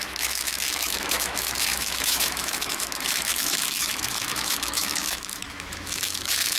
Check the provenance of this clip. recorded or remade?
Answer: remade